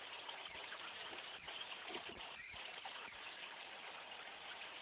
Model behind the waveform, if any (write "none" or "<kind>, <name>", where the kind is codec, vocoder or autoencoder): vocoder, Vocos